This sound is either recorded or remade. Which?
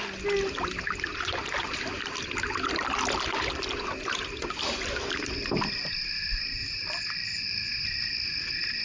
recorded